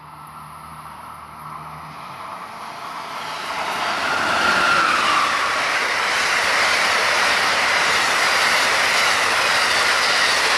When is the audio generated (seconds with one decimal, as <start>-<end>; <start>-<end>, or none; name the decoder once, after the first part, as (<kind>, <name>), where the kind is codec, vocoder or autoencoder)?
none